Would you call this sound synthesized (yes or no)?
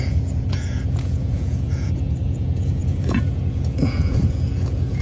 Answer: yes